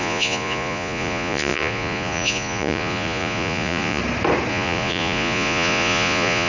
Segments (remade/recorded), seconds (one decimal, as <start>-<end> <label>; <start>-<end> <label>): 0.0-4.0 remade; 4.0-4.5 recorded; 4.5-6.5 remade